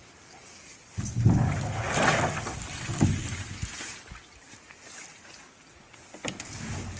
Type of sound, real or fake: real